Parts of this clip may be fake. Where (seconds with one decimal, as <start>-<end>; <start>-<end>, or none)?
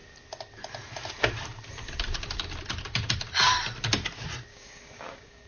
4.5-5.5